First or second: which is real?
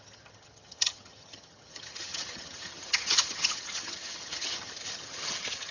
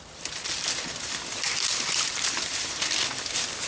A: second